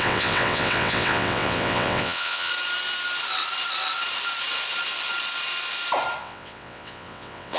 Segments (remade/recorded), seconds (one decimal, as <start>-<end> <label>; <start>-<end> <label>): 0.0-2.5 remade; 2.5-6.2 recorded; 6.2-7.6 remade